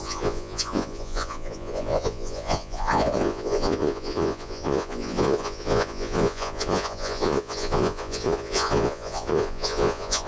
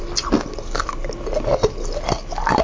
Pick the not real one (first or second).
first